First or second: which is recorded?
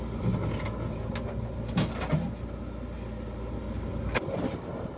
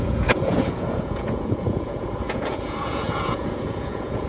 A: first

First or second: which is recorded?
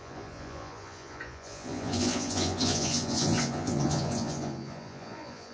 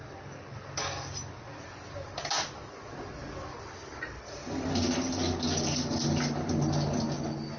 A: second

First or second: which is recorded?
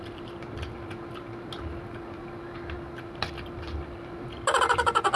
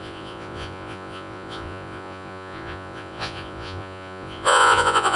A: first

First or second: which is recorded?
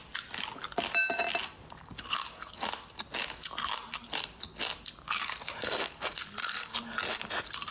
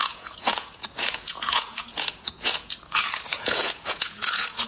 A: first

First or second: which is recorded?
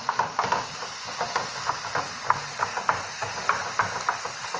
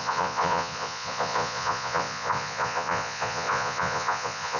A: first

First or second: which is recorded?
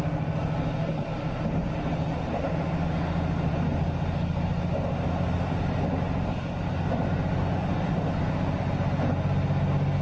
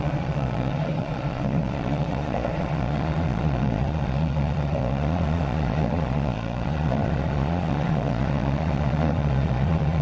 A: first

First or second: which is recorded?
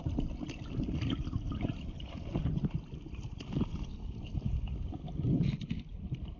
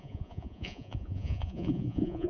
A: first